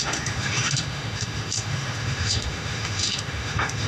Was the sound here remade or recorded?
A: remade